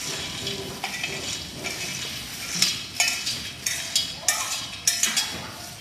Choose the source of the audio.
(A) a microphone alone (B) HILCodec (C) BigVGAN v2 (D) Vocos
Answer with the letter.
A